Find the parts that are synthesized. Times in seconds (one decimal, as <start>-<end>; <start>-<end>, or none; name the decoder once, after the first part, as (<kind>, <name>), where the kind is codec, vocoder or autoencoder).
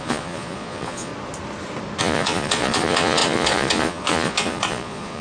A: 0.0-1.1 (vocoder, Vocos); 2.0-5.2